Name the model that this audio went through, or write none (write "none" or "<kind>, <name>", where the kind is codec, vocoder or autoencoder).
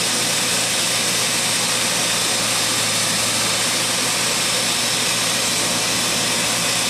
none